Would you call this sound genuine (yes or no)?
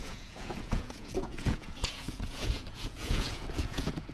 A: no